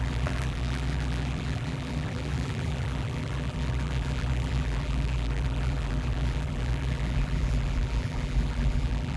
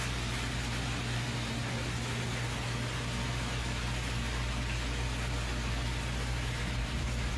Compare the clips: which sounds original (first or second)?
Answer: second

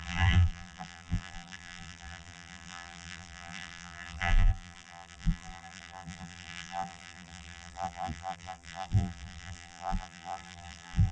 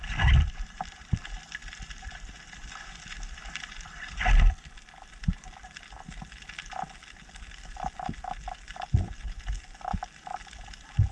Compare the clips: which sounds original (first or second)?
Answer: second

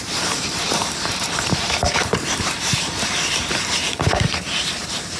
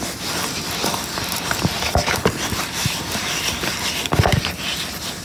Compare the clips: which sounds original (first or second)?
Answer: second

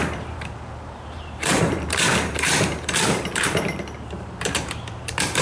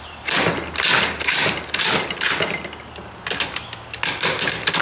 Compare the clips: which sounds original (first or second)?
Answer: second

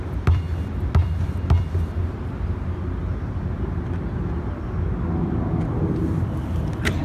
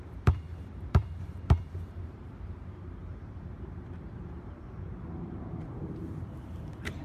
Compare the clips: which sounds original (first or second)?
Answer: first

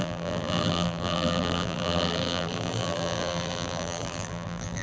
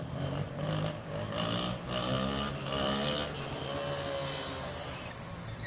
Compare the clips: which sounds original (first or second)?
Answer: second